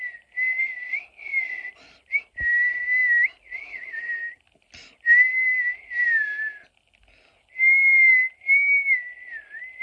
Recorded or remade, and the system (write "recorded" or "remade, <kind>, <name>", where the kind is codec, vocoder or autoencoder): recorded